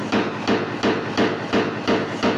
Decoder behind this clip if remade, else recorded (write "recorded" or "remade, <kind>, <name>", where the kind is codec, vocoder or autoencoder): recorded